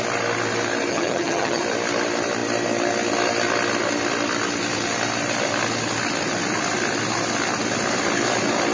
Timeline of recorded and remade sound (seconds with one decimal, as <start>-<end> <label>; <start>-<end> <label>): 0.0-0.9 recorded; 0.9-1.6 remade; 1.6-8.7 recorded